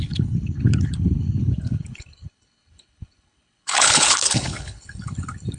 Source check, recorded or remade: remade